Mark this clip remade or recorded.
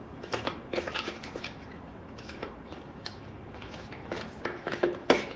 remade